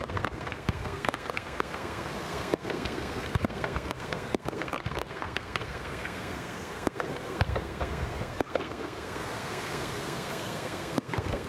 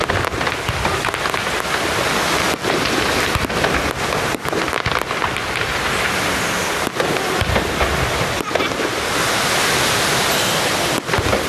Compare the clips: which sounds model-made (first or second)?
first